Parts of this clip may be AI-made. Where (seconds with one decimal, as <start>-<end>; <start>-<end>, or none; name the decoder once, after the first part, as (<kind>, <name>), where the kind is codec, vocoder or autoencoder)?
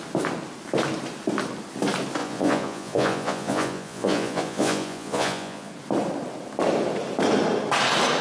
2.2-5.7 (vocoder, Vocos)